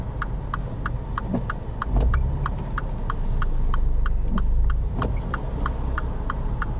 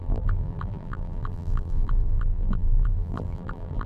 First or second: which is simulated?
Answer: second